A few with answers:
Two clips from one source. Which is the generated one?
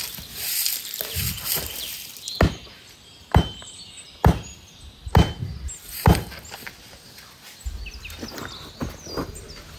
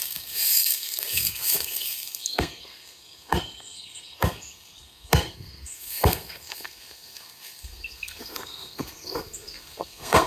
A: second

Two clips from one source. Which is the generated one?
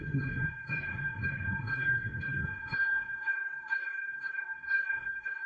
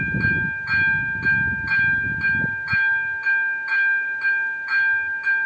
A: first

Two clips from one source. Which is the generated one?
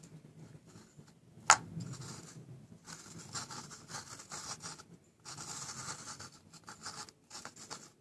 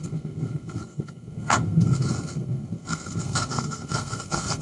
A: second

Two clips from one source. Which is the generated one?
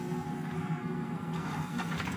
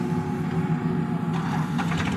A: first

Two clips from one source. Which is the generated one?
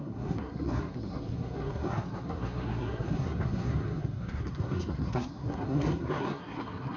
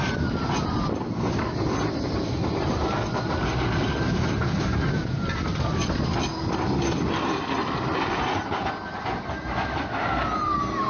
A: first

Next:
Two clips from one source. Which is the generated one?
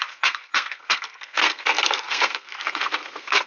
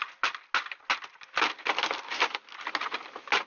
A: first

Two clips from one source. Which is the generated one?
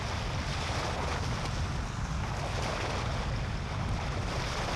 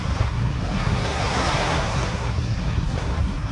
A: second